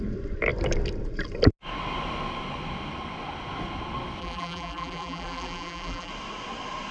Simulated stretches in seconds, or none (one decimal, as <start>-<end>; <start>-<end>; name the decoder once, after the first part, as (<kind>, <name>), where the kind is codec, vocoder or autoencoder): 4.2-6.1 (vocoder, BigVGAN v2)

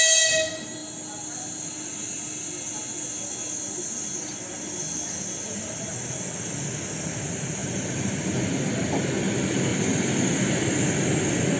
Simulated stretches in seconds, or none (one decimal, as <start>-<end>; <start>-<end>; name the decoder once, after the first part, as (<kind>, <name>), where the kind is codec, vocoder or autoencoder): 7.6-8.2 (vocoder, BigVGAN v2); 9.7-10.4

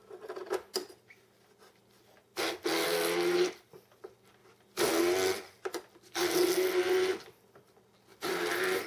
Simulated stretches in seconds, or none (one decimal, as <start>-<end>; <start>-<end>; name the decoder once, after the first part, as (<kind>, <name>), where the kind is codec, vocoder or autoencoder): 8.1-8.9 (vocoder, BigVGAN v2)